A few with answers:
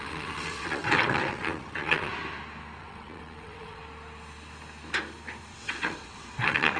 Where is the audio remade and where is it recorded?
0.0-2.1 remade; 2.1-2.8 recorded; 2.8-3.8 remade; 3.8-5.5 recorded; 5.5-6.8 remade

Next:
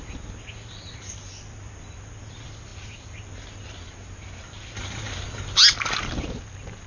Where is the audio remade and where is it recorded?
0.0-6.9 recorded

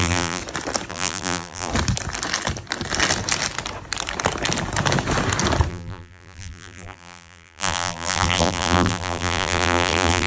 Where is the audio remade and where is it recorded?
0.0-0.4 remade; 0.4-0.9 recorded; 0.9-1.7 remade; 1.7-5.7 recorded; 5.7-10.3 remade

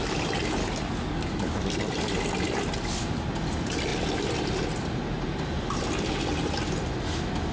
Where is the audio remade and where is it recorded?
0.0-0.6 recorded; 0.6-1.6 remade; 1.6-7.5 recorded

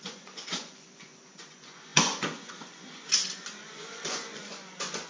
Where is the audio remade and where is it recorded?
0.0-5.1 remade

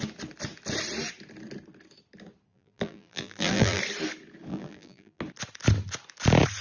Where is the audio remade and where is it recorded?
0.0-2.5 recorded; 2.5-3.8 remade; 3.8-4.5 recorded; 4.5-5.2 remade; 5.2-6.6 recorded

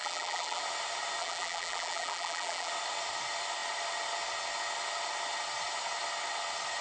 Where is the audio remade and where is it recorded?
0.0-0.6 remade; 0.6-1.2 recorded; 1.2-2.7 remade; 2.7-6.8 recorded

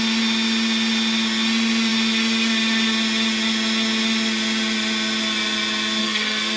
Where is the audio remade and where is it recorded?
0.0-6.0 recorded; 6.0-6.6 remade